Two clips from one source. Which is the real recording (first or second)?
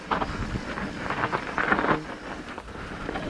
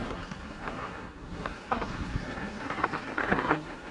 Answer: first